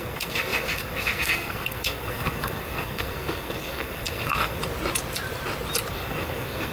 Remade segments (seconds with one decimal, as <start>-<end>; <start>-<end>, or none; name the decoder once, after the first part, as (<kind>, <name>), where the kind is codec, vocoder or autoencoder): 0.0-4.6 (codec, SNAC); 5.9-6.7